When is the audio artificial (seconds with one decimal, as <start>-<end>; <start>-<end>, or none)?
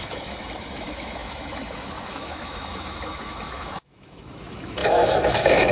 0.0-5.7